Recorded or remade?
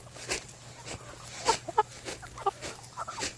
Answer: recorded